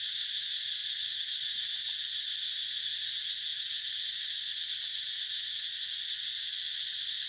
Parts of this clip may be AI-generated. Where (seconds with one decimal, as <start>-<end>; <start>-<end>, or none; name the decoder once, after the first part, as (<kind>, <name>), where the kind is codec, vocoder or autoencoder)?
3.5-4.3 (vocoder, Vocos)